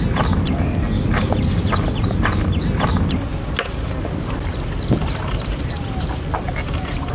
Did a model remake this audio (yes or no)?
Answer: no